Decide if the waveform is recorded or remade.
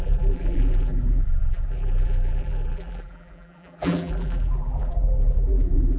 remade